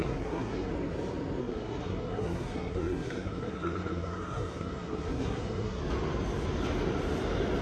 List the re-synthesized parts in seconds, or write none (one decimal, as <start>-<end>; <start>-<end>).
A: 0.0-0.7; 1.4-5.8